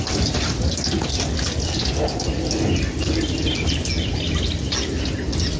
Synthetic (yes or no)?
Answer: no